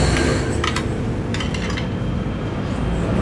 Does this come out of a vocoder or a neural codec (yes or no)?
no